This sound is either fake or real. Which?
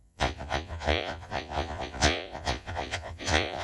fake